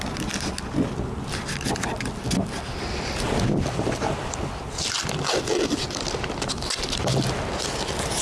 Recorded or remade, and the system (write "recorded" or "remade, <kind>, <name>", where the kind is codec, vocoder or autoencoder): recorded